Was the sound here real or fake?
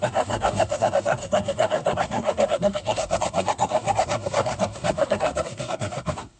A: fake